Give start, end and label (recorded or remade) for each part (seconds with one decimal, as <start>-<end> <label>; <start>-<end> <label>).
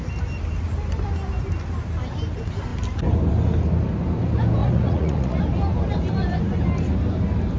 0.0-4.6 recorded; 4.6-5.4 remade; 5.4-7.6 recorded